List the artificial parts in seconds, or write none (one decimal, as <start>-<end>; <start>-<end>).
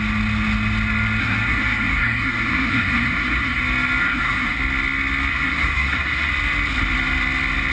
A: 1.2-3.6; 4.0-4.6; 5.3-6.3